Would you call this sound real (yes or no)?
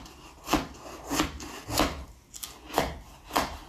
yes